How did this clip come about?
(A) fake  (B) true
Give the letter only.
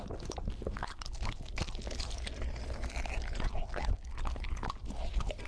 B